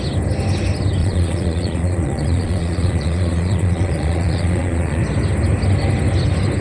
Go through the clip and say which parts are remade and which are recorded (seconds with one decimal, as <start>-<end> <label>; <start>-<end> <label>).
0.0-1.0 recorded; 1.0-5.0 remade; 5.0-6.6 recorded